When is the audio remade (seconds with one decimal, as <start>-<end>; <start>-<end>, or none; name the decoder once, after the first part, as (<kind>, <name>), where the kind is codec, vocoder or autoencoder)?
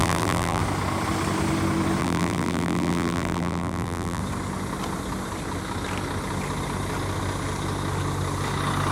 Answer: 0.0-0.6 (vocoder, BigVGAN v2); 2.0-4.2